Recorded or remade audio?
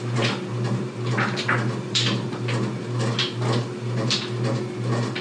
remade